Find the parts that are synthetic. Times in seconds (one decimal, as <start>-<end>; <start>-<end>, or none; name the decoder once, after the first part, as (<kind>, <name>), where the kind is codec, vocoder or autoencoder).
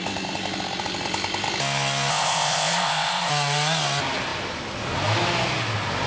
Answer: 2.1-3.3 (codec, ZipCodec)